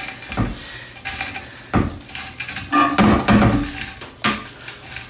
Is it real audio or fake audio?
real